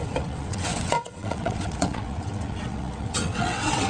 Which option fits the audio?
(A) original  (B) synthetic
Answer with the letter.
B